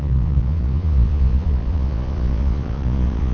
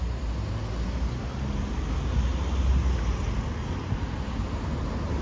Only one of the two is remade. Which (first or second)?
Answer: first